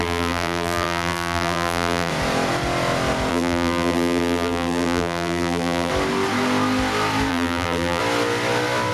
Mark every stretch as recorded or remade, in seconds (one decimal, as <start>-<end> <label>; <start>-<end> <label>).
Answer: 0.0-2.1 remade; 2.1-3.3 recorded; 3.3-5.9 remade; 5.9-7.3 recorded; 7.3-8.0 remade; 8.0-8.9 recorded